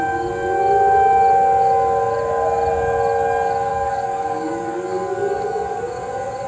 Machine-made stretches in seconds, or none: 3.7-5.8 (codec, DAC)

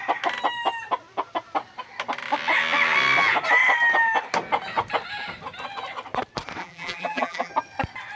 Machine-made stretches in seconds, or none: 6.6-7.5 (vocoder, BigVGAN v2)

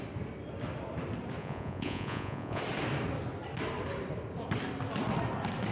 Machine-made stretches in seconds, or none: 1.4-2.6 (vocoder, Vocos)

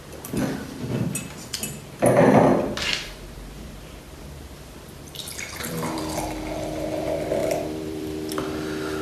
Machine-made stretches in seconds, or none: 2.5-6.0 (vocoder, BigVGAN v2); 7.4-8.3

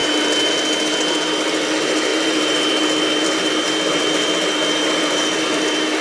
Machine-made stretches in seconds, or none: 0.0-0.5 (vocoder, BigVGAN v2); 2.1-6.0